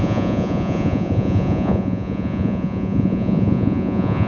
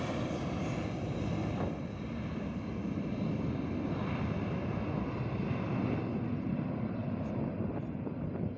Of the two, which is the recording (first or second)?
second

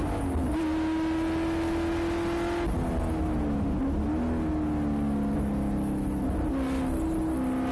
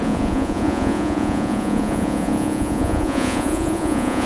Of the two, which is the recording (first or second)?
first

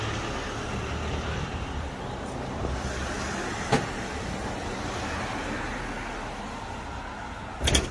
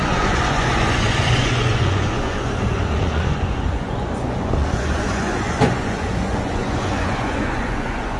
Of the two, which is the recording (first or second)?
first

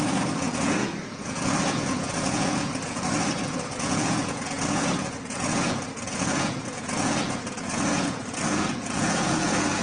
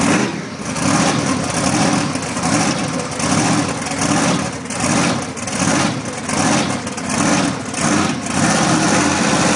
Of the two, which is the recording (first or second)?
second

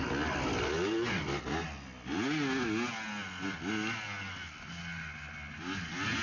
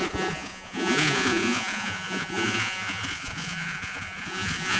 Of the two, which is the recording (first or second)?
first